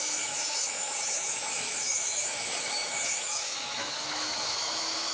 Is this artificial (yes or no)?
yes